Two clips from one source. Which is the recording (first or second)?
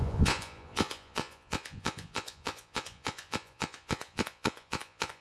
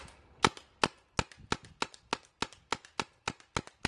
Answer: second